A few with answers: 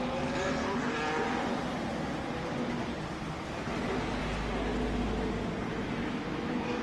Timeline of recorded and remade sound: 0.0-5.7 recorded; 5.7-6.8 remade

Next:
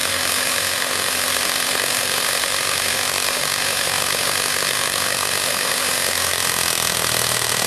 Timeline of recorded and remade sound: 0.0-7.7 remade

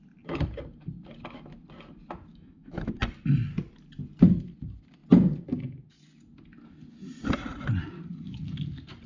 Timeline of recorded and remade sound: 0.0-2.3 recorded; 2.3-2.9 remade; 2.9-9.1 recorded

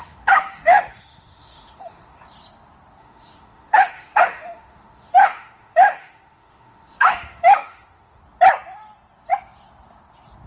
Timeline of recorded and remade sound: 0.0-2.2 remade; 2.2-3.0 recorded; 3.0-8.2 remade; 8.2-10.5 recorded

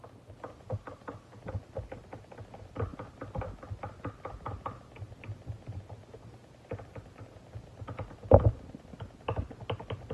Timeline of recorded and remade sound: 0.0-10.1 recorded

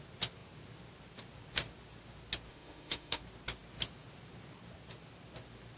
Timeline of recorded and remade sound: 0.0-2.5 recorded; 2.5-3.2 remade; 3.2-5.8 recorded